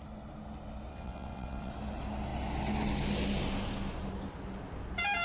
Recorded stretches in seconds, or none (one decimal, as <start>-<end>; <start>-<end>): 0.0-0.9; 1.7-5.2